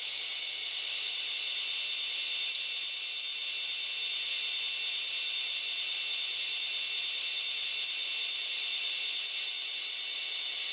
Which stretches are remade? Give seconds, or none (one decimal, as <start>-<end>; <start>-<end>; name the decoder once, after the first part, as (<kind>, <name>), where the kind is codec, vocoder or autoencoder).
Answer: 0.7-1.3 (vocoder, BigVGAN v2)